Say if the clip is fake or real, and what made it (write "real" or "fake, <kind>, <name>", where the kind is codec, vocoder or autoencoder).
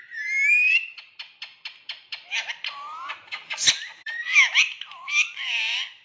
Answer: fake, vocoder, BigVGAN v2